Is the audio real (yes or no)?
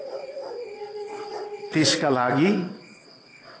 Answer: no